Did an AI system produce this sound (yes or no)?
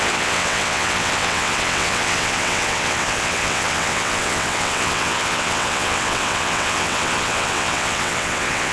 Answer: yes